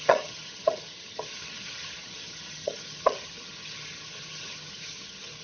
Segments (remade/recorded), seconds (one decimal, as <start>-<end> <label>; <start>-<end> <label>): 0.0-5.4 remade